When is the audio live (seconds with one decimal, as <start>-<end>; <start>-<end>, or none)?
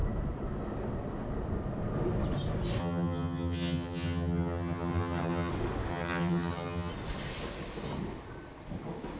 0.0-2.8; 5.5-5.9; 6.9-9.2